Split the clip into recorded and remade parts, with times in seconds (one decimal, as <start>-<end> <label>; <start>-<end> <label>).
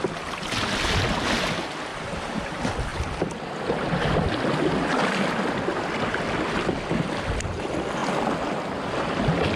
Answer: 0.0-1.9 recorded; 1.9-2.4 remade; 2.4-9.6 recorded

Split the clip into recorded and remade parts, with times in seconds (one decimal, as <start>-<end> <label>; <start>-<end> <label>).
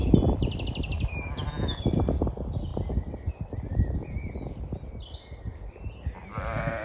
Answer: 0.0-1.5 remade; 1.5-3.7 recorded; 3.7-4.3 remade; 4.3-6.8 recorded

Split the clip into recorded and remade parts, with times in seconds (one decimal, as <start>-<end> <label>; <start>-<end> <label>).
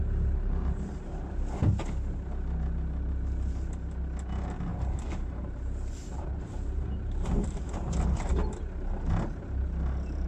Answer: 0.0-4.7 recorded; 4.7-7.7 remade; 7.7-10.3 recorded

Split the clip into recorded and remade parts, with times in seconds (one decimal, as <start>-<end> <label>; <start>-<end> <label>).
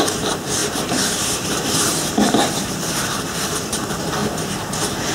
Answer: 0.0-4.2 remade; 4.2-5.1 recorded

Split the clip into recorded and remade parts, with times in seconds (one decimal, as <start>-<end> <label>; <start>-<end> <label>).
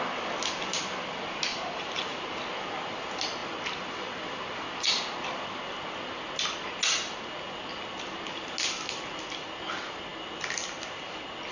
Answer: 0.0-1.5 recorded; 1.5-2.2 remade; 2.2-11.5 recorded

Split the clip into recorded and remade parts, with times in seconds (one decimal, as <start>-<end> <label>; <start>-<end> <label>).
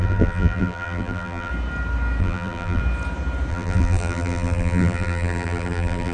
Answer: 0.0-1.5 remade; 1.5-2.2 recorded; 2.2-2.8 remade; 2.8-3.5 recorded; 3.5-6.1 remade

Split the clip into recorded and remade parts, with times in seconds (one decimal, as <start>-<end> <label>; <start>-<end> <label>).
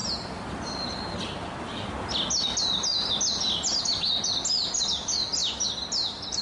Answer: 0.0-6.4 recorded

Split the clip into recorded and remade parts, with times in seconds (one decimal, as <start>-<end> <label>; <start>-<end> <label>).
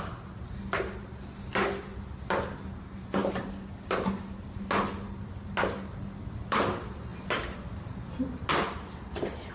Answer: 0.0-9.5 recorded